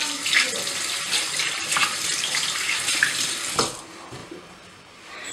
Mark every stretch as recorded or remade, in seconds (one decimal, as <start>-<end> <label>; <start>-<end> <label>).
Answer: 0.0-1.8 recorded; 1.8-3.3 remade; 3.3-4.2 recorded; 4.2-5.3 remade